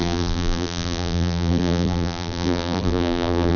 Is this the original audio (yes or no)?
no